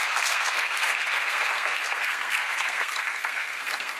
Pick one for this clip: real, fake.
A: fake